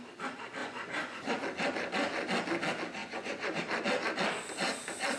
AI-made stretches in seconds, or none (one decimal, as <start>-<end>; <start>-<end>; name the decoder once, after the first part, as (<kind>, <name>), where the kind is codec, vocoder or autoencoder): 0.6-1.3 (vocoder, Vocos); 3.0-3.6